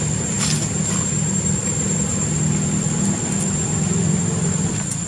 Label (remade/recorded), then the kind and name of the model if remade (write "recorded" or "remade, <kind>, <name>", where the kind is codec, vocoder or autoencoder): recorded